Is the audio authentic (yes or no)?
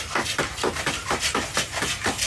no